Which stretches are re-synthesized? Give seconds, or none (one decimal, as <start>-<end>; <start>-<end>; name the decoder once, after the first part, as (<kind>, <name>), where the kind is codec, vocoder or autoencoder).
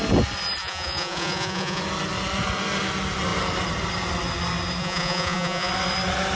0.6-1.8 (vocoder, Vocos); 4.8-5.7